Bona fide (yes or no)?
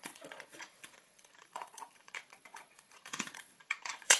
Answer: no